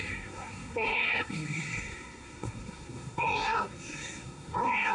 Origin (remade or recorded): remade